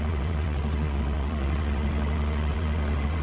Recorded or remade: remade